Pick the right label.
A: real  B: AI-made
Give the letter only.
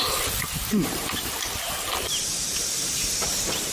B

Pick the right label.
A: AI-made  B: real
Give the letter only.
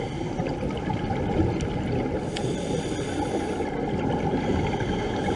A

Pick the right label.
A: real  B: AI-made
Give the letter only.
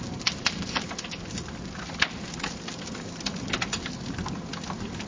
A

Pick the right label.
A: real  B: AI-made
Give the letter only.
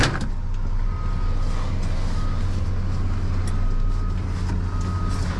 A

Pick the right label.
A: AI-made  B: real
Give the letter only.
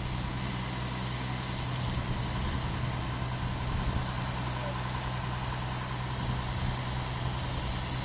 B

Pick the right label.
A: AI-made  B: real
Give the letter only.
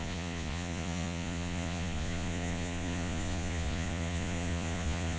A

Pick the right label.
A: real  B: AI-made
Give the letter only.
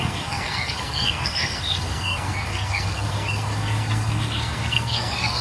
B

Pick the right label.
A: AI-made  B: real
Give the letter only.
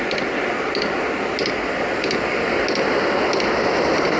B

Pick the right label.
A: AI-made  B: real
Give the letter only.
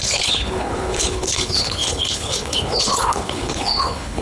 A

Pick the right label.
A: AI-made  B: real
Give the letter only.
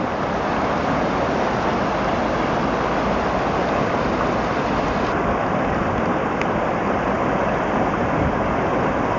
B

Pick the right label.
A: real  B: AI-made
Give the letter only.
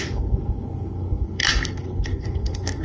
B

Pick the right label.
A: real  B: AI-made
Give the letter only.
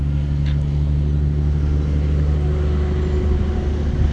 A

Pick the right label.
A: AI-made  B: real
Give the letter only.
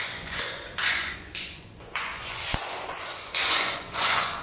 A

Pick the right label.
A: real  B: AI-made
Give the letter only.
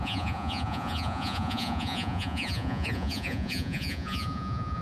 B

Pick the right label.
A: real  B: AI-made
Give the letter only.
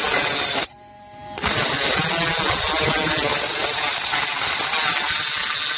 A